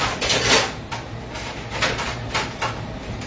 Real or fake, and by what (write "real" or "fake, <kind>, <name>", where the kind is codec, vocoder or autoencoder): real